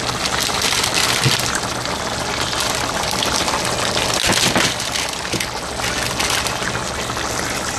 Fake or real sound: real